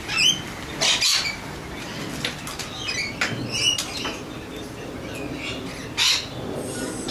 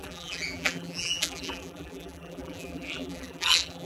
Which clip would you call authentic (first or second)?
first